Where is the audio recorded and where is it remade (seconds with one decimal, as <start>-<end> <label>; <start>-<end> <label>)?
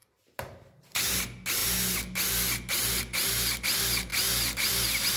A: 0.0-1.2 remade; 1.2-5.2 recorded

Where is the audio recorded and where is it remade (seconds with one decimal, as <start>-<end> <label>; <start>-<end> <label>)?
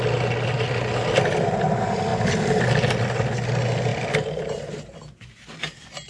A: 0.0-6.1 recorded